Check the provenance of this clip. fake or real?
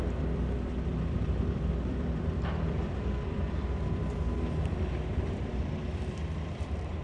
fake